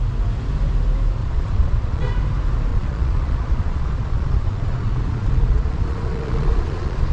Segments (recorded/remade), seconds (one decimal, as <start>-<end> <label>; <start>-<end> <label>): 0.0-1.2 recorded; 1.2-2.1 remade; 2.1-2.7 recorded; 2.7-7.1 remade